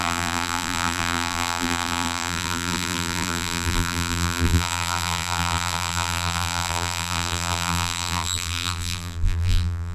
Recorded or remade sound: remade